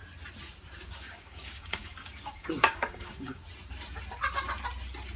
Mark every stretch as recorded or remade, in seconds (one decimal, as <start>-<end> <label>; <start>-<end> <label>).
0.0-0.9 recorded; 0.9-3.4 remade; 3.4-5.2 recorded

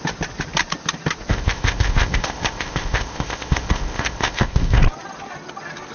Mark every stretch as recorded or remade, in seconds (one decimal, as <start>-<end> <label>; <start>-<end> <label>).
0.0-1.3 recorded; 1.3-4.8 remade; 4.8-5.9 recorded

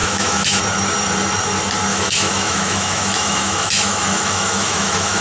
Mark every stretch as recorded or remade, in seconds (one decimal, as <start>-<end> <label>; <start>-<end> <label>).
0.0-0.6 remade; 0.6-1.9 recorded; 1.9-5.2 remade

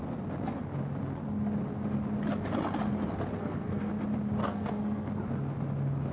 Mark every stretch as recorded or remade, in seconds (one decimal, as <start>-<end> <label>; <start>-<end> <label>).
0.0-3.4 recorded; 3.4-3.9 remade; 3.9-4.4 recorded; 4.4-5.1 remade; 5.1-6.1 recorded